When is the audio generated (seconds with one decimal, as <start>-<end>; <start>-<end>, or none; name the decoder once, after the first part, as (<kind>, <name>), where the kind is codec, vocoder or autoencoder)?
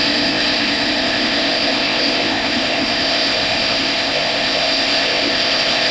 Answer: 0.0-5.9 (codec, ZipCodec)